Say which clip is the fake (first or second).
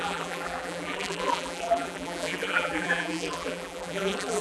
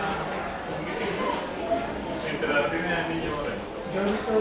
first